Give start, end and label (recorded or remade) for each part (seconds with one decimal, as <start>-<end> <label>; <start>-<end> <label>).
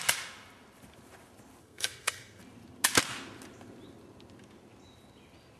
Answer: 0.0-1.6 recorded; 1.6-2.4 remade; 2.4-5.6 recorded